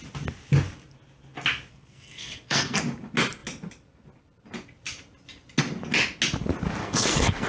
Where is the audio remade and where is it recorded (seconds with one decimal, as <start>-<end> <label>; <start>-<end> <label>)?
0.0-1.7 recorded; 1.7-2.8 remade; 2.8-6.8 recorded; 6.8-7.5 remade